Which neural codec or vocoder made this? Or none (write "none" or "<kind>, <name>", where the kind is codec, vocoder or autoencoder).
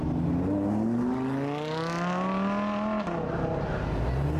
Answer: none